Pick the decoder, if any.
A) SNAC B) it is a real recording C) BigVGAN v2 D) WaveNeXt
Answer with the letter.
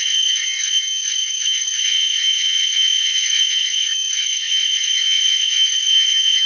D